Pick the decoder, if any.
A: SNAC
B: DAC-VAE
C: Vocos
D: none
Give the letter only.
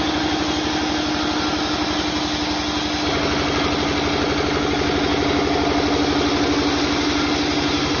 D